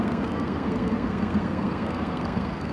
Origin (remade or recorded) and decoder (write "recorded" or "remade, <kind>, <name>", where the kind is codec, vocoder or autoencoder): remade, codec, SNAC